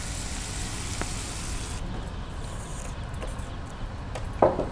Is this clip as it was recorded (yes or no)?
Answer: yes